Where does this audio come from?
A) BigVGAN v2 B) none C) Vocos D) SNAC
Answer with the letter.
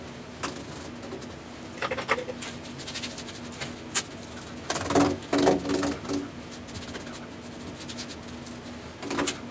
B